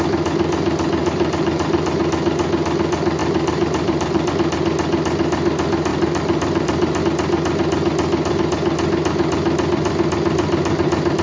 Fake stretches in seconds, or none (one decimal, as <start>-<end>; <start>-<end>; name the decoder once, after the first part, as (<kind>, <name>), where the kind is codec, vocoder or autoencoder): 1.0-2.0 (vocoder, BigVGAN v2); 3.2-4.3; 5.9-7.0